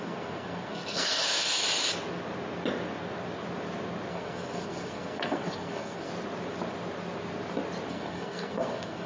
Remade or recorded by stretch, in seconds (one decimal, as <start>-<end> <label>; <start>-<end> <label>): 0.0-1.6 remade; 1.6-4.1 recorded; 4.1-6.1 remade; 6.1-7.9 recorded; 7.9-9.1 remade